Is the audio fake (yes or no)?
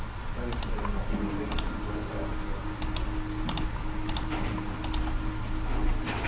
no